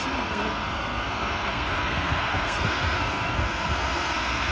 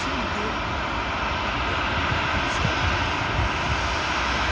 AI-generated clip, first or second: first